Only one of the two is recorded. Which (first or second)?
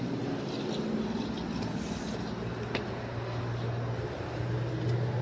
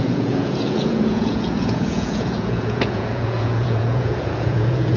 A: first